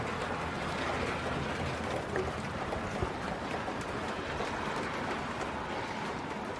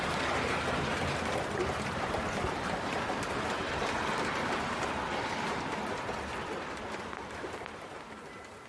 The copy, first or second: second